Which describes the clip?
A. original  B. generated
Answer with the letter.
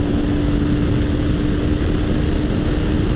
A